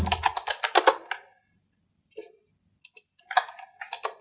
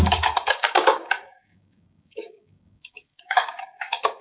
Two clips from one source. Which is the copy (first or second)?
second